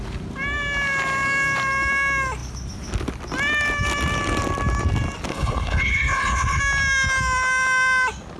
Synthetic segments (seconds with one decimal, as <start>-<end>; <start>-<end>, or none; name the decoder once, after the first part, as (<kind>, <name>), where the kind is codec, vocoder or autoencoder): 5.3-6.6 (codec, HILCodec)